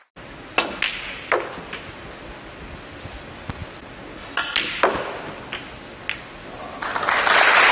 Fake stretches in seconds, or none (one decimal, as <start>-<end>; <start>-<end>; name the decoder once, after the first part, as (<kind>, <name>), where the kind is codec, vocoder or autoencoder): none